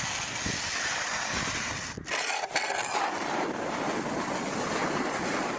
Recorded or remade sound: recorded